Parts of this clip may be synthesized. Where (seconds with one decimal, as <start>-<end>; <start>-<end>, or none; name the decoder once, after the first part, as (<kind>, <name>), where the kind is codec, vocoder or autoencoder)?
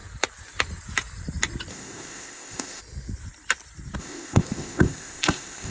1.7-2.8 (codec, ZipCodec); 4.0-5.7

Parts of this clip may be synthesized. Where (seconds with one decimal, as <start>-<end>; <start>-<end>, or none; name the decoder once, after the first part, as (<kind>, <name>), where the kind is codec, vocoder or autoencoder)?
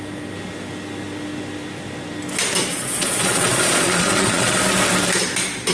2.7-4.6 (vocoder, Vocos)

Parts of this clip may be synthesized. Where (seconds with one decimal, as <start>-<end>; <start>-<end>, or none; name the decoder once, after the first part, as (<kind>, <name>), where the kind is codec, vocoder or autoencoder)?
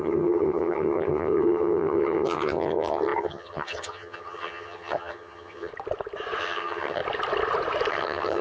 0.0-5.7 (vocoder, HiFi-GAN); 6.4-7.0; 7.9-8.4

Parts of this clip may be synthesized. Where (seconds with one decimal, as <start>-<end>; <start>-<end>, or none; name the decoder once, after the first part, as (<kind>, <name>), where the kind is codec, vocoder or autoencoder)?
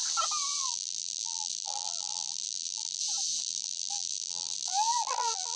0.6-3.0 (vocoder, BigVGAN v2); 3.4-5.6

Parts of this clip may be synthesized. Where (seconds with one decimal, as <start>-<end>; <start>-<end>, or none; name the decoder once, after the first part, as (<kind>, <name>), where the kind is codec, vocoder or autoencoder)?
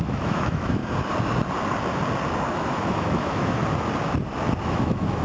0.0-0.8 (autoencoder, DAC-VAE); 2.5-3.6; 4.6-5.2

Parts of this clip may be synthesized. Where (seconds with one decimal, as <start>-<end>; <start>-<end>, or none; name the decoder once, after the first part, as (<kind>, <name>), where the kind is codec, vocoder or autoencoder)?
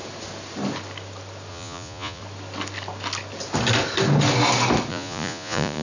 1.5-2.2 (vocoder, Vocos); 4.9-5.8